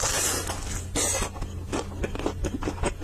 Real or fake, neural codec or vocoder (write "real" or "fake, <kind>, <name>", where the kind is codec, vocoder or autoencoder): real